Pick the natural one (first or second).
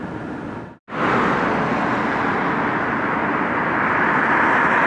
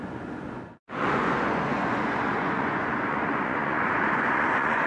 first